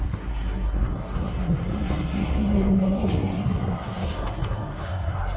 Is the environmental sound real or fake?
fake